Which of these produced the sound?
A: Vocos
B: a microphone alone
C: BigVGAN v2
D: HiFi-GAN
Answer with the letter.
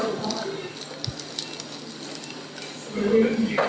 B